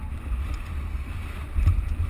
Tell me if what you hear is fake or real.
real